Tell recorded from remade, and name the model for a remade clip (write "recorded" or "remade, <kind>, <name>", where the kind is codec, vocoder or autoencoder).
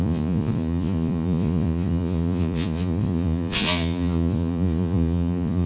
remade, vocoder, Vocos